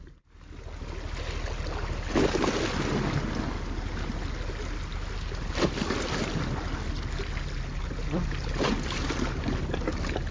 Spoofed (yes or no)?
no